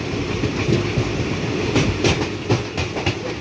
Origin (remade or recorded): recorded